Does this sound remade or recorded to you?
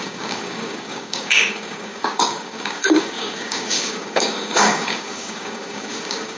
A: remade